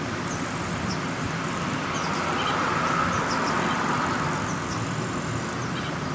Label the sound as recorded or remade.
recorded